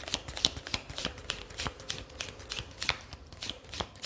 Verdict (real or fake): fake